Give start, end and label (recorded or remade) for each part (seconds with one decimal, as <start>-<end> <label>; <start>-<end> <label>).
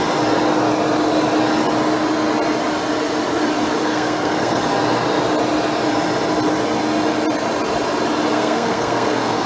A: 0.0-3.8 recorded; 3.8-4.6 remade; 4.6-8.3 recorded; 8.3-9.5 remade